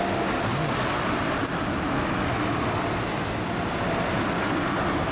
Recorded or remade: recorded